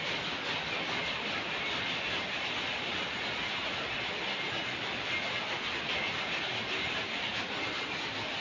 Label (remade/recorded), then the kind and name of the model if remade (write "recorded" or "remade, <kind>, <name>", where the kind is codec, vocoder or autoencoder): recorded